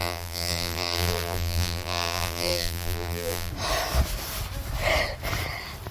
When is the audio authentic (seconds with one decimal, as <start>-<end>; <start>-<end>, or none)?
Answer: 3.5-5.9